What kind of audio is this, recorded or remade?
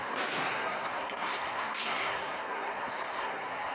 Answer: remade